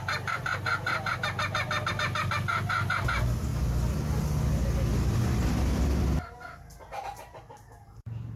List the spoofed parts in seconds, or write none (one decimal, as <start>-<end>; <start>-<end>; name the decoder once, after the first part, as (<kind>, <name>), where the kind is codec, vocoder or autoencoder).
4.9-5.8 (vocoder, BigVGAN v2)

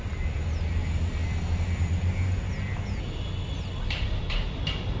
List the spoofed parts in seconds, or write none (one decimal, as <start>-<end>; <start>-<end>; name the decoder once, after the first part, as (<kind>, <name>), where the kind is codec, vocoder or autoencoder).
0.0-0.8 (vocoder, BigVGAN v2); 3.8-5.0

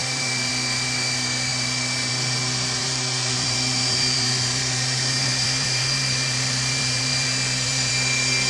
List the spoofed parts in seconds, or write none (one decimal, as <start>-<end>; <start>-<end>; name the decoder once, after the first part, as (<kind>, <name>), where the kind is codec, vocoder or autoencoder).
0.0-0.5 (vocoder, BigVGAN v2); 2.8-7.9

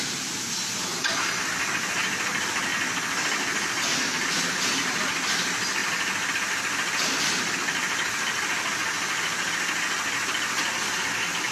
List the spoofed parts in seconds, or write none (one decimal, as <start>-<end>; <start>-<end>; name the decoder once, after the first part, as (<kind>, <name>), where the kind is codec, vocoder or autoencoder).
none